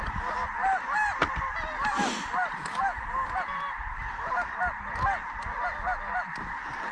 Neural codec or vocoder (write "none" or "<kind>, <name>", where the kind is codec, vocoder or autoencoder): none